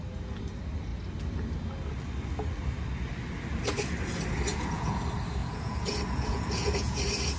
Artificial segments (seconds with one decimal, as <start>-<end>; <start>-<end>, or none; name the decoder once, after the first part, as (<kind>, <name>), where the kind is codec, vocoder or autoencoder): 4.5-5.0 (vocoder, Vocos); 5.4-7.0